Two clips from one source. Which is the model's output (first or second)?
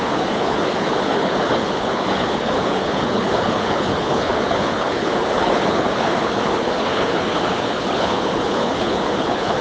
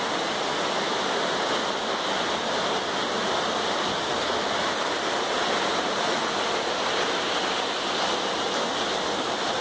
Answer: first